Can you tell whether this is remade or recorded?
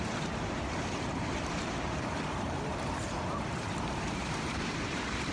remade